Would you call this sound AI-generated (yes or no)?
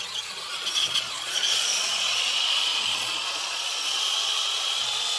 yes